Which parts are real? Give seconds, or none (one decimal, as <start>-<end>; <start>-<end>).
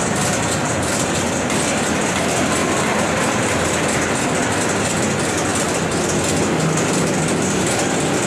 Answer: 0.0-8.3